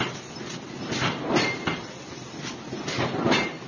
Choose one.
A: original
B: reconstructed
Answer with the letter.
A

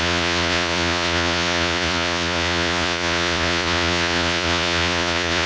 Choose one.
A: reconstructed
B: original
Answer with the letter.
A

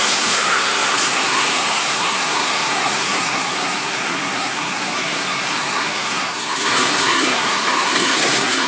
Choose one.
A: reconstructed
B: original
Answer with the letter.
A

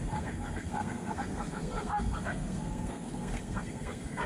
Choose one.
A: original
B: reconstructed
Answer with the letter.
B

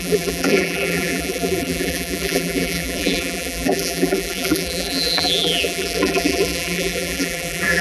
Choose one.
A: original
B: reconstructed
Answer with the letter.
B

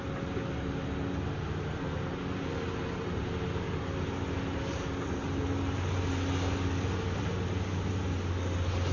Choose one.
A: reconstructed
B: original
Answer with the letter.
B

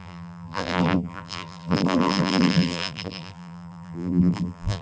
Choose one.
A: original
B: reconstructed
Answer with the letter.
B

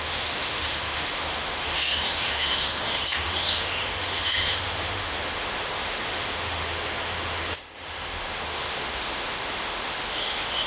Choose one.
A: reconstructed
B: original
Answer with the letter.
A